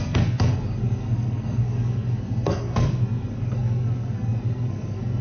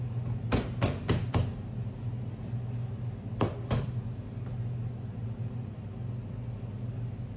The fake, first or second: first